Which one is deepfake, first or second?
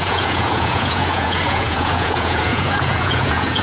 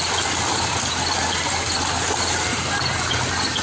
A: first